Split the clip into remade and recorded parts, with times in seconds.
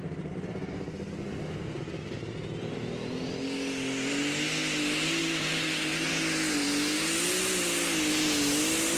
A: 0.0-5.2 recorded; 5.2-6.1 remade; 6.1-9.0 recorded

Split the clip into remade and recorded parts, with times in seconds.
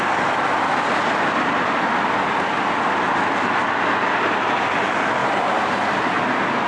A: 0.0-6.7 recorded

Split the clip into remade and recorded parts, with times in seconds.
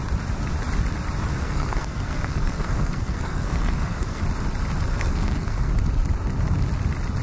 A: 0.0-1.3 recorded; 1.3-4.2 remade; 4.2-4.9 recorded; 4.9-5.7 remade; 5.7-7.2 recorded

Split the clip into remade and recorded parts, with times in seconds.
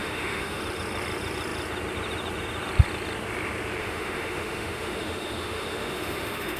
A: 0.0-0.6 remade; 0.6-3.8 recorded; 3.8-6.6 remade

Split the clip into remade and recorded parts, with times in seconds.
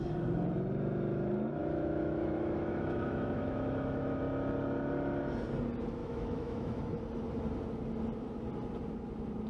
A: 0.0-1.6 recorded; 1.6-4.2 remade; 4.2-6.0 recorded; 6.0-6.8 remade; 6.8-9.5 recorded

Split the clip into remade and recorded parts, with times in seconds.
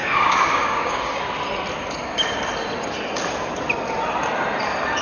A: 0.0-1.2 remade; 1.2-5.0 recorded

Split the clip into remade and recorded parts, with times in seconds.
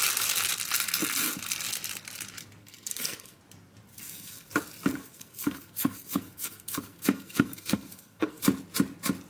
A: 0.0-2.6 recorded; 2.6-3.4 remade; 3.4-3.9 recorded; 3.9-4.5 remade; 4.5-4.9 recorded; 4.9-8.4 remade; 8.4-9.3 recorded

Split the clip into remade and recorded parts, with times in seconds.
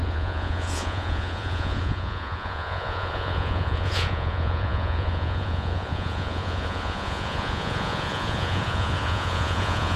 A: 0.0-10.0 remade